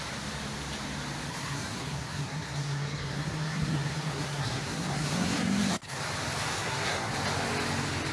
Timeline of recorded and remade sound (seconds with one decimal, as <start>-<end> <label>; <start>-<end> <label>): 0.0-1.3 recorded; 1.3-6.0 remade; 6.0-6.5 recorded; 6.5-7.1 remade; 7.1-8.1 recorded